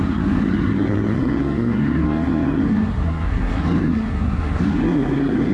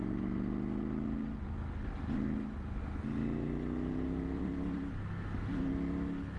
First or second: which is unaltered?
second